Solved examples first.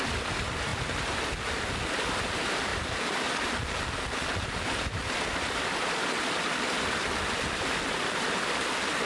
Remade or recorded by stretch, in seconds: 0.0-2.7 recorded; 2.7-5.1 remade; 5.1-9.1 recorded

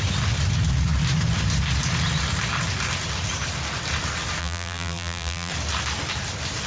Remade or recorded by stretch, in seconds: 0.0-4.4 recorded; 4.4-5.5 remade; 5.5-6.7 recorded

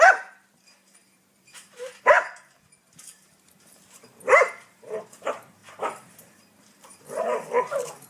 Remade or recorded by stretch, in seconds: 0.0-8.1 remade

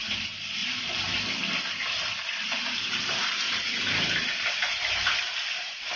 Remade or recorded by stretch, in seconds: 0.0-6.0 remade

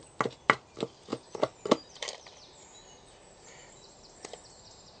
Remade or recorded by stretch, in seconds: 0.0-1.1 recorded; 1.1-4.1 remade; 4.1-5.0 recorded